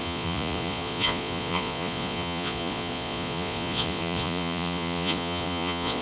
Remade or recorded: remade